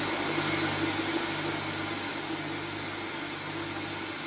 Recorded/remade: recorded